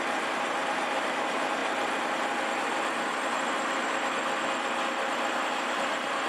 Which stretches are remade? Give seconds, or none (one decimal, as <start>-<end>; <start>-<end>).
0.0-1.6; 5.4-6.3

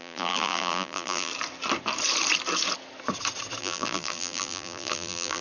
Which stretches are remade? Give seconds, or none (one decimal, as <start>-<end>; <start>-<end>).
0.0-1.3; 3.6-5.4

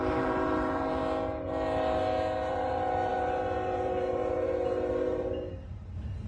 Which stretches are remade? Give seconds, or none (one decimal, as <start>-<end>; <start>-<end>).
0.0-1.0; 2.5-6.3

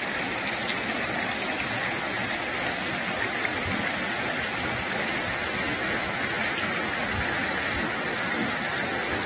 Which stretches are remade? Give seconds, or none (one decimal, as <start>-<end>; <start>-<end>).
none

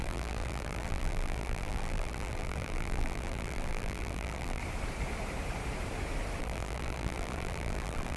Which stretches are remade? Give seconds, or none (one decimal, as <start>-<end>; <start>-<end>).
0.0-4.6; 6.4-8.2

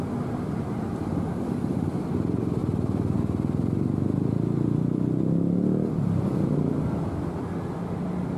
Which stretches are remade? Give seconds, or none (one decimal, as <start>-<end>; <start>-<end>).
2.6-3.2

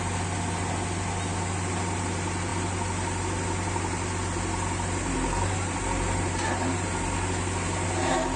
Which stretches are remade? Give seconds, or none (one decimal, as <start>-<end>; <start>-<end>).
none